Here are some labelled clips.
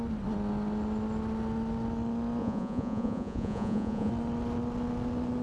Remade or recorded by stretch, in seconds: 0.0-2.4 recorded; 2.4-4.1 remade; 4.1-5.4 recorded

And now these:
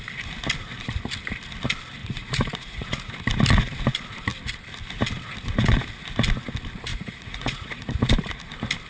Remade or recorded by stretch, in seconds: 0.0-2.0 recorded; 2.0-3.1 remade; 3.1-6.9 recorded; 6.9-7.9 remade; 7.9-8.9 recorded